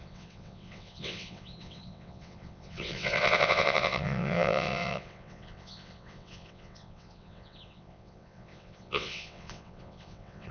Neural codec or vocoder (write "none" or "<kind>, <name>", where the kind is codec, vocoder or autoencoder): vocoder, WaveNeXt